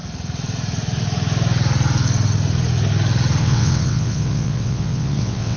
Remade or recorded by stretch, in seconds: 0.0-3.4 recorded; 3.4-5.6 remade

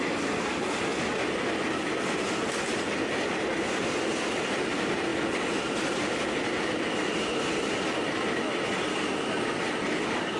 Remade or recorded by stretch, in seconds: 0.0-10.4 recorded